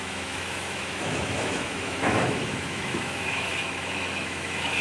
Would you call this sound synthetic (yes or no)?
yes